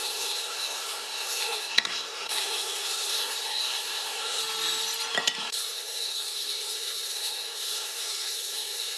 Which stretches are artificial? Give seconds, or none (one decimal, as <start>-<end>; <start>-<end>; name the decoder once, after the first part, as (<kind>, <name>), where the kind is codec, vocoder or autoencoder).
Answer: 0.0-4.4 (codec, SNAC); 5.4-9.0